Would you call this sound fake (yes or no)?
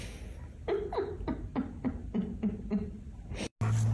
no